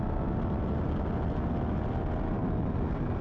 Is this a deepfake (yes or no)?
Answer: no